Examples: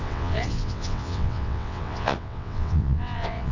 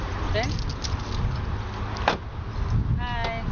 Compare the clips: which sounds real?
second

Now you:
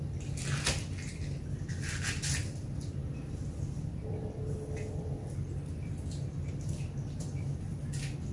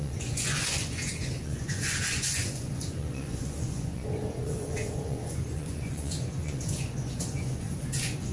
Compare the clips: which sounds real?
first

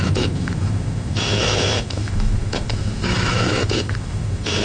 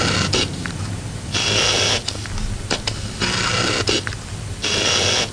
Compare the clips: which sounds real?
second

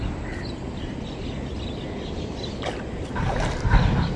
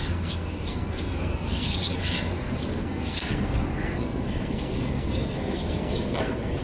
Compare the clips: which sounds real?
first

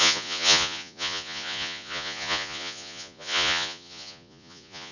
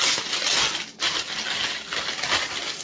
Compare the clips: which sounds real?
second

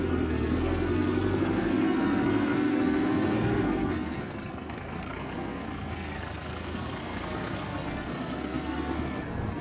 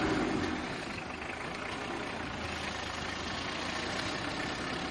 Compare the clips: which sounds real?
second